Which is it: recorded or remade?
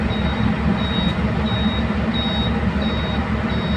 recorded